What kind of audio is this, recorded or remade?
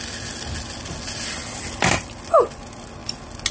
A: recorded